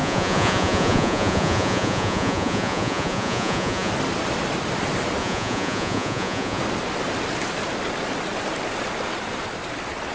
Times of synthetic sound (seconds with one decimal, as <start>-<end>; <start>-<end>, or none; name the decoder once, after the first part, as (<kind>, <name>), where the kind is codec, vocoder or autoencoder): 0.0-3.9 (vocoder, Vocos); 5.2-6.6